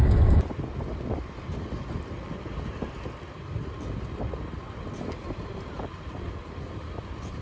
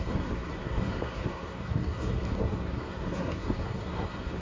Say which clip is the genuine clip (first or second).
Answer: first